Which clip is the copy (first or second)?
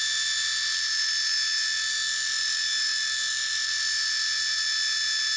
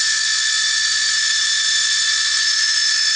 second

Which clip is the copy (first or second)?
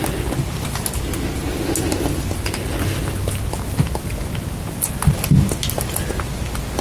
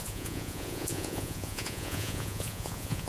second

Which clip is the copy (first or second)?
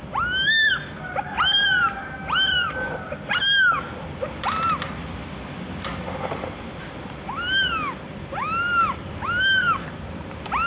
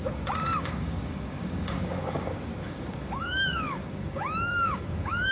second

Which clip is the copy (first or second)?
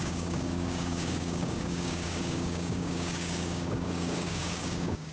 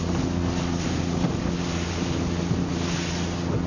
first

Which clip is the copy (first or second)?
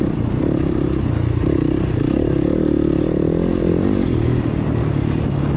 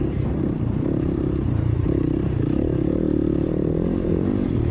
second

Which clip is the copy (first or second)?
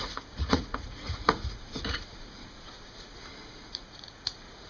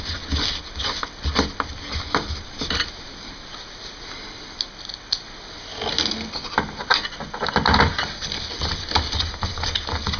first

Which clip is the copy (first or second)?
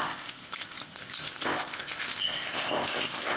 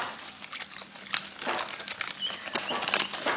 first